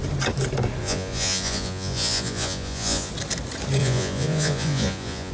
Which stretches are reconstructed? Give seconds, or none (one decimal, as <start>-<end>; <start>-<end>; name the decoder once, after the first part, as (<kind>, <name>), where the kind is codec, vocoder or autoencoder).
0.8-3.1 (vocoder, Vocos); 3.8-5.3